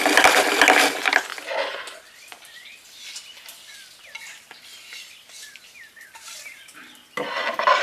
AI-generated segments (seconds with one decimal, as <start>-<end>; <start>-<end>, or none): none